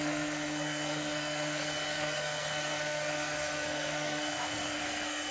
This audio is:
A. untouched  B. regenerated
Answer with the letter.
B